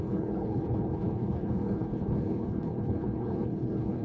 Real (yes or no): no